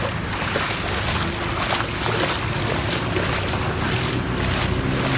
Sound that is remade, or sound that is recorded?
recorded